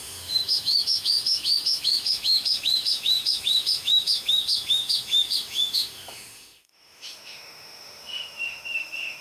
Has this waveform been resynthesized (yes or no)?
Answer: yes